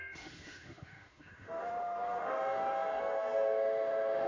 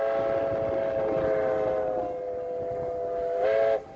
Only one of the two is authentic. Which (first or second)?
second